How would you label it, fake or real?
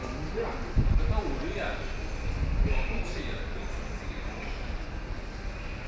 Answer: real